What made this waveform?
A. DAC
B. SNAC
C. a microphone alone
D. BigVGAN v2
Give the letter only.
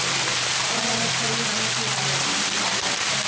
D